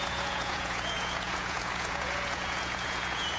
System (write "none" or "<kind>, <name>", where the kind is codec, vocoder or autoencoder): vocoder, Vocos